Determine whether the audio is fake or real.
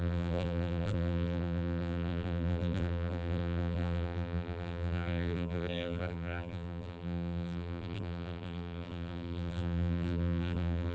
fake